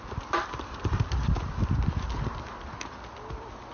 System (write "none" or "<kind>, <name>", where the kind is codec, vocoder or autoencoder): none